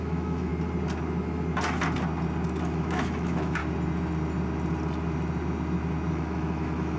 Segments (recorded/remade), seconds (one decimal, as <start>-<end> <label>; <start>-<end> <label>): 0.0-0.5 remade; 0.5-2.6 recorded; 2.6-3.6 remade; 3.6-6.1 recorded; 6.1-7.0 remade